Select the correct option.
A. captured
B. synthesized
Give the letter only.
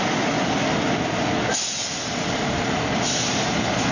A